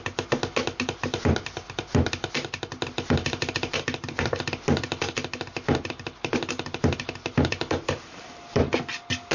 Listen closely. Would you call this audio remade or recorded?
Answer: recorded